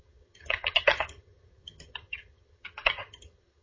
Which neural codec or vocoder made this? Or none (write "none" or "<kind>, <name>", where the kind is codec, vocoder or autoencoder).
vocoder, HiFi-GAN